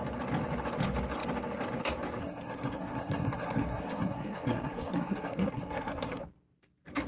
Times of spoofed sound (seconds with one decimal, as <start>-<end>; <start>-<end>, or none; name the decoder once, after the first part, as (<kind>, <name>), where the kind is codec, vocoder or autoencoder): 2.2-6.2 (codec, SNAC)

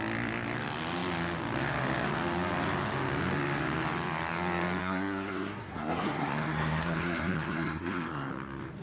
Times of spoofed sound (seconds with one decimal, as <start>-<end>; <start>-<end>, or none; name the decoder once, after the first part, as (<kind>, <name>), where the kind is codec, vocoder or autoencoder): 4.8-8.3 (codec, SNAC)

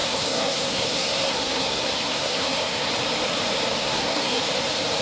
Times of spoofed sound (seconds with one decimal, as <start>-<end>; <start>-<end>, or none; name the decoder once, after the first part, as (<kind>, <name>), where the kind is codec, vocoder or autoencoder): 0.0-2.9 (codec, SNAC); 3.8-4.4

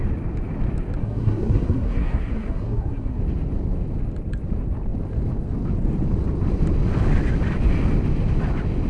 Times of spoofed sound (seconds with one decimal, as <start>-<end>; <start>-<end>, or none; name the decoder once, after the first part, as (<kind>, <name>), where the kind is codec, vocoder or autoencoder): 1.0-3.2 (codec, SNAC)

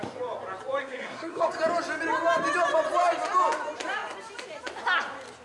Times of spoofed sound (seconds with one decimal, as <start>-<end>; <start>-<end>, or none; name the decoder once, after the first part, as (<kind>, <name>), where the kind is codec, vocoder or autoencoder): 0.8-1.5 (codec, SNAC)